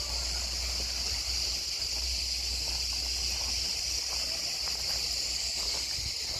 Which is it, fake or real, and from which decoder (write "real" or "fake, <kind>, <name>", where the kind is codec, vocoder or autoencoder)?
real